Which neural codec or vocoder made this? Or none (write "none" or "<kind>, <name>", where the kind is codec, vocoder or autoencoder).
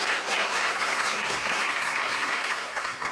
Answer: codec, SNAC